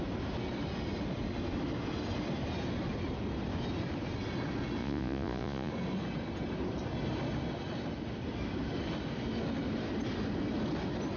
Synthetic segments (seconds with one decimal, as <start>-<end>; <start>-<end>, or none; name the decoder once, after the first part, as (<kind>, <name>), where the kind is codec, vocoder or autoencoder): 4.8-5.7 (vocoder, Vocos)